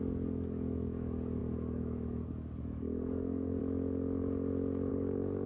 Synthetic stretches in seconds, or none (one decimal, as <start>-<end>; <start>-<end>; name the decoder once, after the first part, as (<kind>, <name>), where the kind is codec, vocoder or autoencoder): 0.0-3.6 (codec, DAC); 4.9-5.5